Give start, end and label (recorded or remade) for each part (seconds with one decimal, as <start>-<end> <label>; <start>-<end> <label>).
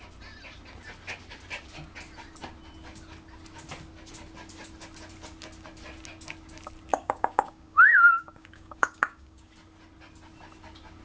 0.0-6.9 recorded; 6.9-9.5 remade; 9.5-11.0 recorded